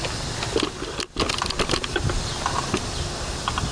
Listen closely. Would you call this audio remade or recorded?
recorded